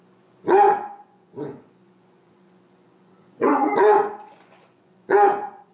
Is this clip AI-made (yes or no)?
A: yes